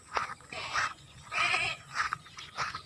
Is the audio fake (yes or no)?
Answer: yes